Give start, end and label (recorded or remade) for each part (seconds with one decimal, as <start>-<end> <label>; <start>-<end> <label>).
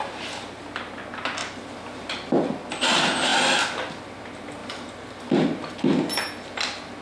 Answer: 0.0-1.4 recorded; 1.4-2.1 remade; 2.1-3.3 recorded; 3.3-4.0 remade; 4.0-4.6 recorded; 4.6-5.2 remade; 5.2-7.0 recorded